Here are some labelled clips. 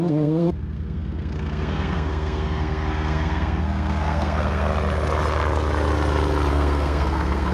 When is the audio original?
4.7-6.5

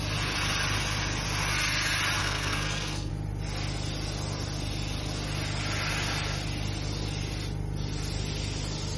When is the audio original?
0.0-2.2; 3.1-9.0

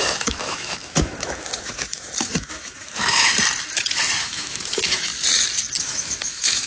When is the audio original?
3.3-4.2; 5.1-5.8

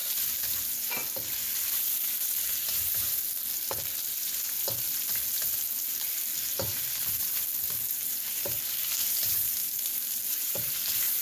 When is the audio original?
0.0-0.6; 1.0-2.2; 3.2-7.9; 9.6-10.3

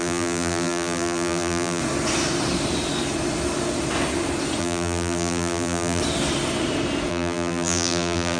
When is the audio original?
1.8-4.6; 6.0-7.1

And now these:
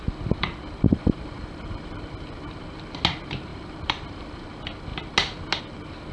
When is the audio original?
0.0-0.9; 2.0-3.5; 4.4-6.1

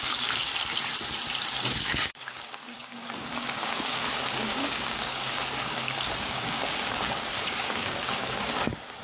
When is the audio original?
0.5-1.8

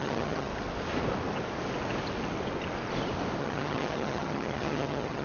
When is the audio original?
0.5-3.4